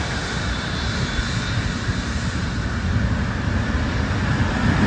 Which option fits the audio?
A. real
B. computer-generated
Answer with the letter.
A